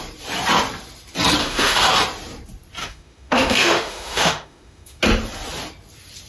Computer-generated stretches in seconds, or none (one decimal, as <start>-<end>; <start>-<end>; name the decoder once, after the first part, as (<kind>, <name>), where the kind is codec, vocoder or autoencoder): 1.4-1.9 (autoencoder, DAC-VAE); 2.8-5.0